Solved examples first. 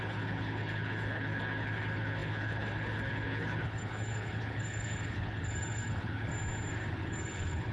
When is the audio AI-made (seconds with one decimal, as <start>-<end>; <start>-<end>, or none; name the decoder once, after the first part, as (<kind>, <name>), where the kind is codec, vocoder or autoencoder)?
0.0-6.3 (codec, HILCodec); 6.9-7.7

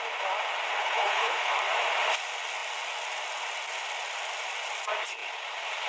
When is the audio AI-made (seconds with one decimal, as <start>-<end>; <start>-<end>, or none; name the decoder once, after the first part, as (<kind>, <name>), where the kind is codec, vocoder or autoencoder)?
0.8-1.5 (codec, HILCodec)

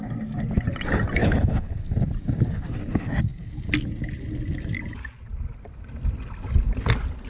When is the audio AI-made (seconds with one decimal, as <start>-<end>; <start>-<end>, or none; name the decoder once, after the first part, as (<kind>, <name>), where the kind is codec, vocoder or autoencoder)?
1.2-1.8 (codec, HILCodec)

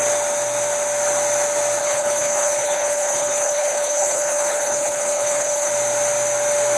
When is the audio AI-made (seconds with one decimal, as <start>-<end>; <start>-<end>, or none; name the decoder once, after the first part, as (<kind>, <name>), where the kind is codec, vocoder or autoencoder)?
1.8-5.7 (codec, HILCodec)

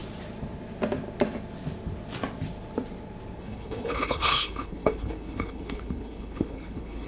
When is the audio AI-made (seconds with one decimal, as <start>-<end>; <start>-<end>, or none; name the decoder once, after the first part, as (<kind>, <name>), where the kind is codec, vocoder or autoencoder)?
3.4-7.1 (codec, HILCodec)

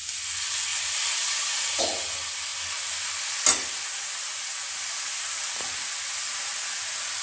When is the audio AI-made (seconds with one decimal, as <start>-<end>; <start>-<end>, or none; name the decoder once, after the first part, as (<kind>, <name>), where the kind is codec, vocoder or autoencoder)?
none

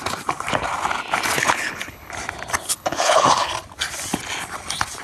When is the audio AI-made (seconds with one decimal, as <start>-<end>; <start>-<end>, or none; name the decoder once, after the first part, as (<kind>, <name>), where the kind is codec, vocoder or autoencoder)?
1.4-2.1 (codec, HILCodec); 2.7-3.5